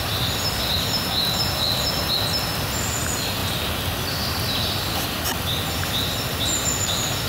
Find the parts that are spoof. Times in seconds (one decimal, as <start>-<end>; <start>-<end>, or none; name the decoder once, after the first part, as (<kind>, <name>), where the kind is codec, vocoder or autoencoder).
none